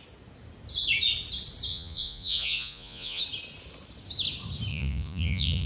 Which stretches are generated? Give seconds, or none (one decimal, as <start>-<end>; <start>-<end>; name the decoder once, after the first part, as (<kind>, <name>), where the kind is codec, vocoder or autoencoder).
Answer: 1.7-3.2 (vocoder, Vocos); 4.7-5.7